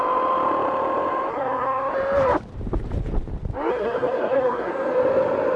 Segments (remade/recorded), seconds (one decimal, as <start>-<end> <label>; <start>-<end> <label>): 0.0-1.3 recorded; 1.3-1.9 remade; 1.9-3.7 recorded; 3.7-4.7 remade; 4.7-5.6 recorded

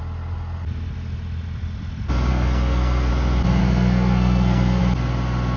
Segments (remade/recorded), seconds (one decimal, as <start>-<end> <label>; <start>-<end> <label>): 0.0-2.3 recorded; 2.3-3.1 remade; 3.1-3.6 recorded; 3.6-4.8 remade; 4.8-5.6 recorded

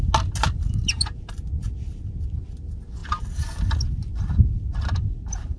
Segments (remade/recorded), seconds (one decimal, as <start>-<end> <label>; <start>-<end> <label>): 0.0-5.6 recorded

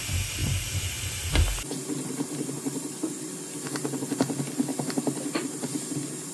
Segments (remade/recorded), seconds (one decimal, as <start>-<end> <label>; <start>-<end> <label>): 0.0-0.4 recorded; 0.4-1.3 remade; 1.3-6.3 recorded

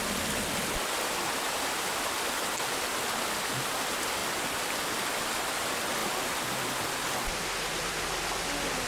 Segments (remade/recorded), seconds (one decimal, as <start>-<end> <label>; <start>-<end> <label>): 0.0-4.2 recorded; 4.2-5.6 remade; 5.6-8.9 recorded

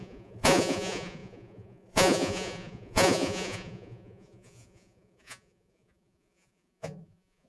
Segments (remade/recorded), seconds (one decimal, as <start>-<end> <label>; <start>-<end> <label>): 0.0-7.5 remade

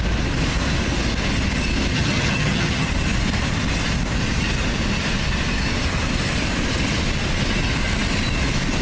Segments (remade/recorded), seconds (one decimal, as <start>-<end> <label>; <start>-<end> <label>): 0.0-1.9 recorded; 1.9-2.9 remade; 2.9-8.8 recorded

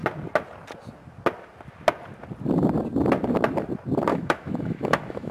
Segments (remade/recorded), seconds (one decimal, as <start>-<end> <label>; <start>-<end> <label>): 0.0-4.1 recorded; 4.1-5.3 remade